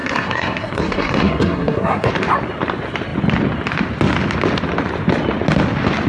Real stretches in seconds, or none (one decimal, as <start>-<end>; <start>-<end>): 2.1-6.1